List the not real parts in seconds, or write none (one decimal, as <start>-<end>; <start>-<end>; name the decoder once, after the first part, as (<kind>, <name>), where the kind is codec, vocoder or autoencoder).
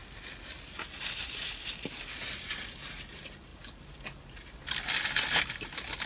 none